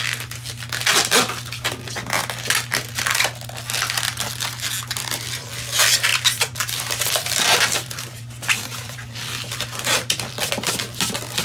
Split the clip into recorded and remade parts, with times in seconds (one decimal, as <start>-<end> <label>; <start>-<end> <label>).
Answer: 0.0-5.0 recorded; 5.0-5.5 remade; 5.5-6.1 recorded; 6.1-10.5 remade; 10.5-11.4 recorded